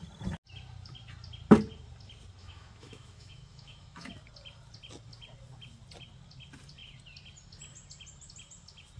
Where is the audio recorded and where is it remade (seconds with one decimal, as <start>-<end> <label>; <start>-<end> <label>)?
0.0-2.4 recorded; 2.4-4.1 remade; 4.1-9.0 recorded